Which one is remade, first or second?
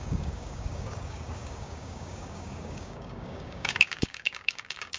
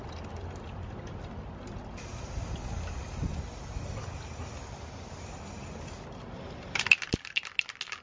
first